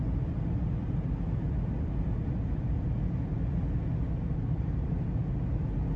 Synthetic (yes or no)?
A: no